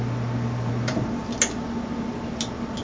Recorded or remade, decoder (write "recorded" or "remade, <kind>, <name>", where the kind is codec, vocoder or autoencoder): recorded